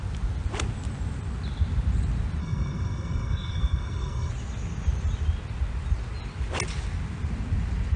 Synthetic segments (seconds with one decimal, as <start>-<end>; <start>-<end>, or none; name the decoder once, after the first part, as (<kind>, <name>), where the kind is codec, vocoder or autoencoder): 2.4-4.3 (codec, SNAC)